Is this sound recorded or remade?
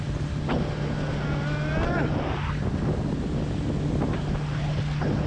recorded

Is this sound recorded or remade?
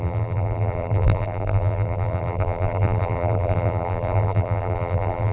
remade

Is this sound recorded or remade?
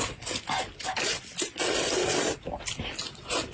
recorded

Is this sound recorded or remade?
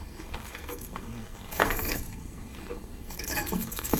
remade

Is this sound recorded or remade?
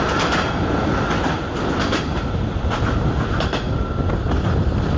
recorded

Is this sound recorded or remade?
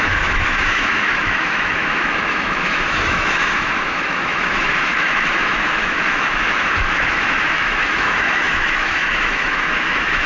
remade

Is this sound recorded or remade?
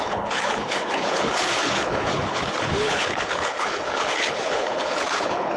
remade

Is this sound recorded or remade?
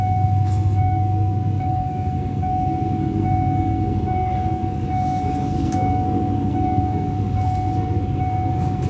remade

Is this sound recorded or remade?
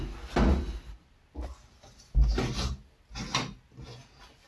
recorded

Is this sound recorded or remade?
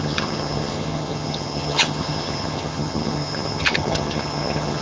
remade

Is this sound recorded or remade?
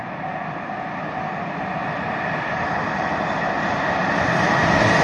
recorded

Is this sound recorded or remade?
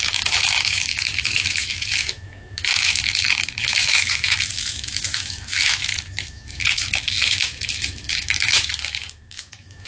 remade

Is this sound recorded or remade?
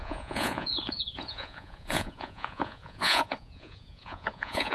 remade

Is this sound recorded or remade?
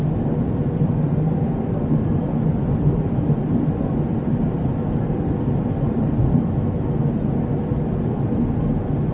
recorded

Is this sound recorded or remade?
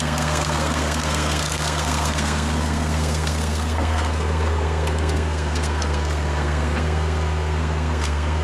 remade